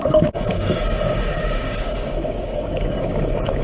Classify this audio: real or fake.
fake